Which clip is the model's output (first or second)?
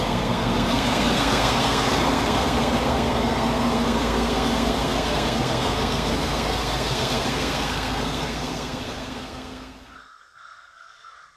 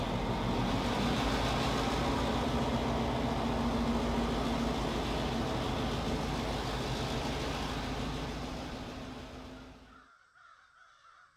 first